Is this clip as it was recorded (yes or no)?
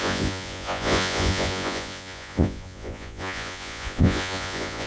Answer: no